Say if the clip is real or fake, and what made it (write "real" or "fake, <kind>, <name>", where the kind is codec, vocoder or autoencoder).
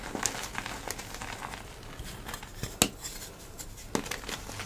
real